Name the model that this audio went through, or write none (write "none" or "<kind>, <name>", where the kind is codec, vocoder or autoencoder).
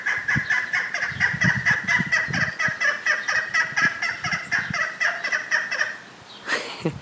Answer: none